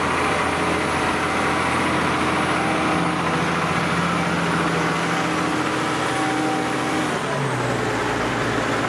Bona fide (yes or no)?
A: yes